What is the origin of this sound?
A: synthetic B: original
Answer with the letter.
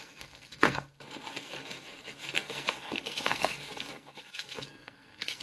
A